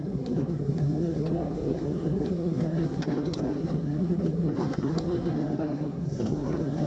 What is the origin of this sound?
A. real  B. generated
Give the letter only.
B